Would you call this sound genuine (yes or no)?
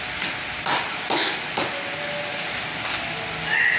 yes